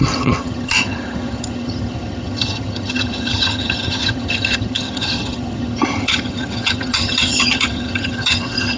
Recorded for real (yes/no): no